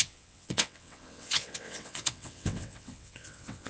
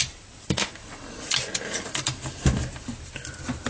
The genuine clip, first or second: second